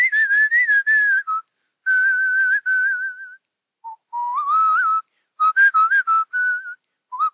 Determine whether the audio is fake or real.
real